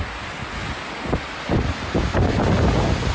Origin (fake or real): real